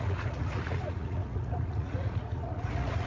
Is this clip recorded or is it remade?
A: remade